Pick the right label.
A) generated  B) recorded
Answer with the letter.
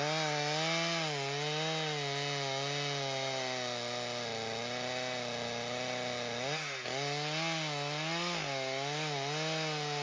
B